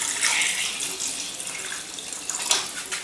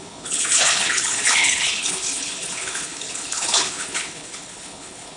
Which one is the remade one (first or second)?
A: second